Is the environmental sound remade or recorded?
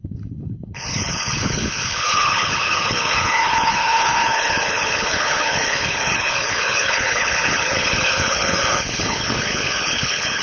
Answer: remade